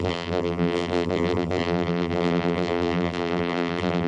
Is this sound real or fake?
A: fake